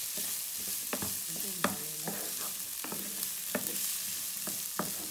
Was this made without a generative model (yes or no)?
yes